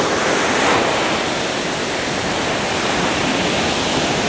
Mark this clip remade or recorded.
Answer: recorded